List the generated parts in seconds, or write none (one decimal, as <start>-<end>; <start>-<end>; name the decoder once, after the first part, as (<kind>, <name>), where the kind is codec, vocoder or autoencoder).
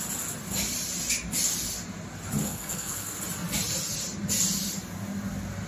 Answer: 2.4-3.2 (codec, SNAC)